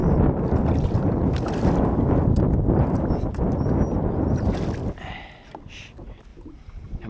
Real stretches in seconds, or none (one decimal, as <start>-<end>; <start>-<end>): 0.0-7.1